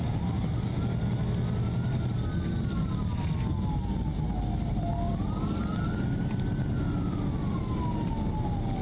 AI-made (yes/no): no